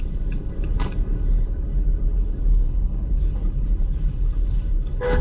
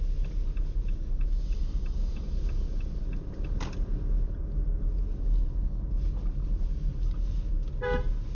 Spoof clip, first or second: first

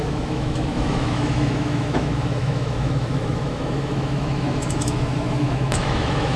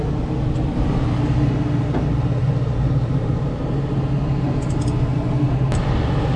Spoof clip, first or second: first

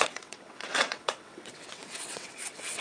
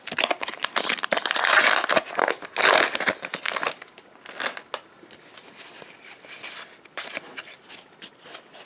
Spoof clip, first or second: first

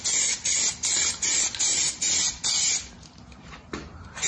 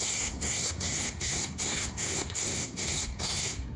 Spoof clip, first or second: second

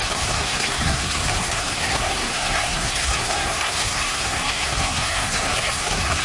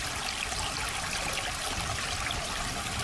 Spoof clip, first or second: first